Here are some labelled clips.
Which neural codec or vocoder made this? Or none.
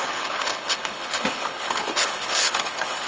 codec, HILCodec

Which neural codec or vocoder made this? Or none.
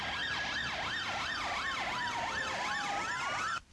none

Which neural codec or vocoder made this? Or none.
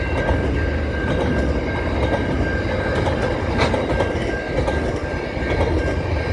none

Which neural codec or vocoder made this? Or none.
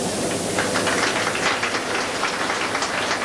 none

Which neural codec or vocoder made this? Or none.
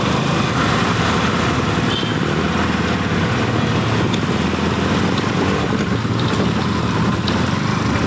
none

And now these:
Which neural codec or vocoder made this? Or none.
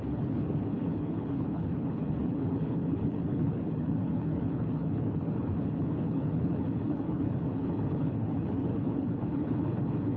codec, HILCodec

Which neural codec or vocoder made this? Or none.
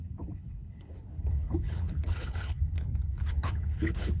codec, HILCodec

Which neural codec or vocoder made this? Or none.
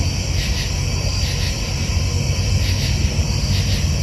none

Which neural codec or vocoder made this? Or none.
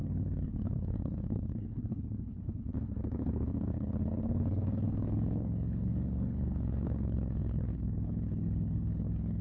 codec, HILCodec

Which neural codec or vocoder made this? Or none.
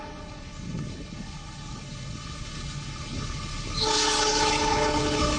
codec, HILCodec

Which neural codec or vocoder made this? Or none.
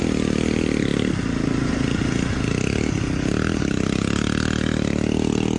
none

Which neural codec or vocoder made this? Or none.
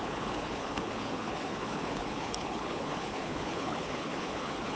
codec, HILCodec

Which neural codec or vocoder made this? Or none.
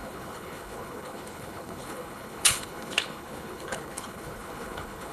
codec, HILCodec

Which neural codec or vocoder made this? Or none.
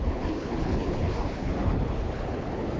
codec, HILCodec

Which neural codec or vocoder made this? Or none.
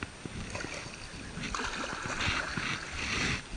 none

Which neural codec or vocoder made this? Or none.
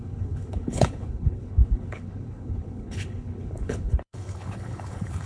codec, HILCodec